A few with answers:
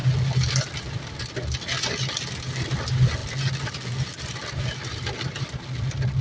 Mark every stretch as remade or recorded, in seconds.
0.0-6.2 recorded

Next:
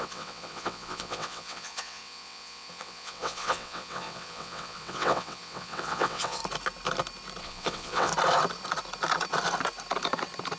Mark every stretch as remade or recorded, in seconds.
0.0-6.4 remade; 6.4-7.4 recorded; 7.4-8.1 remade; 8.1-10.6 recorded

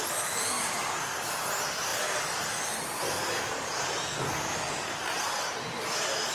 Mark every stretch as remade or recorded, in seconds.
0.0-6.3 recorded